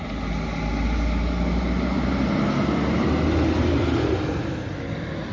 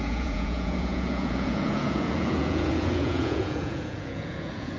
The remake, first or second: second